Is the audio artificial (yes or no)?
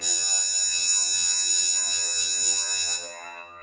yes